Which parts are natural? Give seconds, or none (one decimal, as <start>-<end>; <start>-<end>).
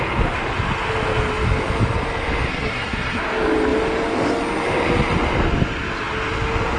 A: 0.0-2.5; 3.2-6.8